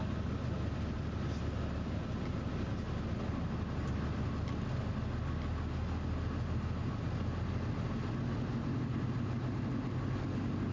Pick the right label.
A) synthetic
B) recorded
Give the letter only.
B